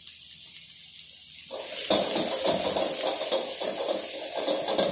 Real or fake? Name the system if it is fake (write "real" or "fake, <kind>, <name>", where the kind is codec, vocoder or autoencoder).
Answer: real